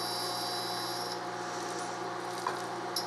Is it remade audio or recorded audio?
recorded